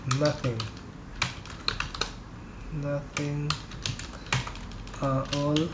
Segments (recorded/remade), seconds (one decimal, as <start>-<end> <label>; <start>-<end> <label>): 0.0-5.7 recorded